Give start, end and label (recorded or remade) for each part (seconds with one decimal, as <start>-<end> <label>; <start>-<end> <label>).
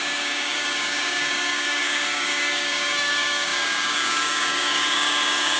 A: 0.0-5.6 remade